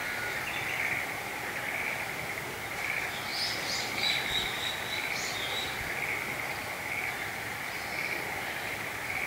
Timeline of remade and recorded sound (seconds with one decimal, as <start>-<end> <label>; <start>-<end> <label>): 0.0-9.3 recorded